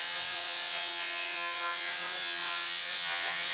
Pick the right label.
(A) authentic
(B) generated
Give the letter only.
B